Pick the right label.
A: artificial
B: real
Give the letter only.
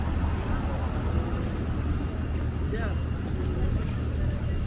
B